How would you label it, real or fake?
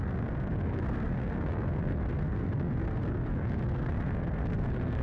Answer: fake